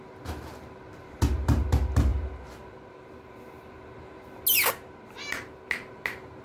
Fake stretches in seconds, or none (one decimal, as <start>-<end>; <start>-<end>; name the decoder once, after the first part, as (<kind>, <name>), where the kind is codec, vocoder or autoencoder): none